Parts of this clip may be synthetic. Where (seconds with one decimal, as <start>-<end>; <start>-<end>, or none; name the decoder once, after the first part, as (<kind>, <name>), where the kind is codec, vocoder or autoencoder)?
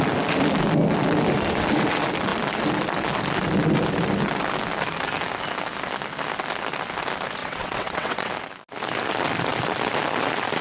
7.4-8.3 (vocoder, WaveNeXt)